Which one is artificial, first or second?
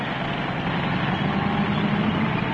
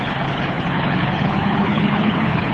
second